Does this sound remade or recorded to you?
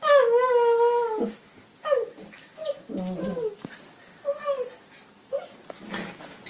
recorded